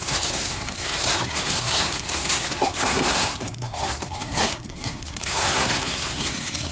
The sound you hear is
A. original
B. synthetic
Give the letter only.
B